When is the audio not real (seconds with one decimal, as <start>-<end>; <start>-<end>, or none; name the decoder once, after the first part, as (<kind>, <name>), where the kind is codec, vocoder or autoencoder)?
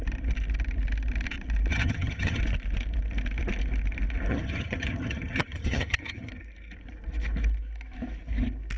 1.7-2.4 (vocoder, HiFi-GAN); 4.3-6.3